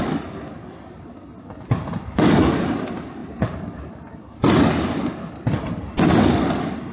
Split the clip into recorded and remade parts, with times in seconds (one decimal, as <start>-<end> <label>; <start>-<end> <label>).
0.0-3.2 recorded; 3.2-4.5 remade; 4.5-6.9 recorded